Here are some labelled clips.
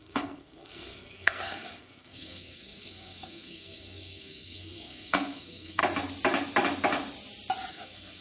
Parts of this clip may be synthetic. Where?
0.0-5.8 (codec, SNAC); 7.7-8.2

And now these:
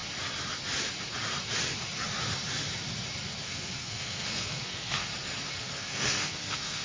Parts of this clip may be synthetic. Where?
3.4-5.1 (codec, SNAC); 5.6-6.8

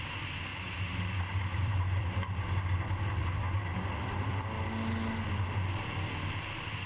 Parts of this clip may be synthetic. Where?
0.5-1.0 (vocoder, BigVGAN v2); 1.5-2.9; 3.7-4.3

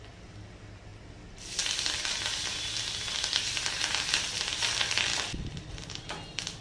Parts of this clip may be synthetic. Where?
none

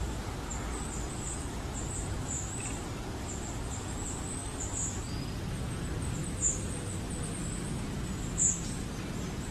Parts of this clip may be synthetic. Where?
0.5-4.0 (vocoder, BigVGAN v2); 4.4-5.0

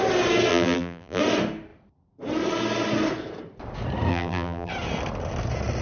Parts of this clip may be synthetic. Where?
0.5-1.2 (vocoder, BigVGAN v2); 4.1-4.7

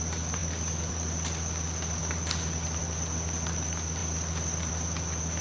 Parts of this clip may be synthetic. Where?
none